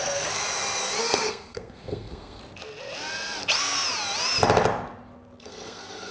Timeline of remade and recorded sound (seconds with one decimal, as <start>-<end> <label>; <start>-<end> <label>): 0.0-0.4 remade; 0.4-1.0 recorded; 1.0-2.4 remade; 2.4-5.4 recorded; 5.4-6.1 remade